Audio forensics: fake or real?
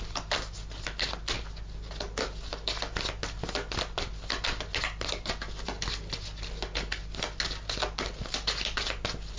real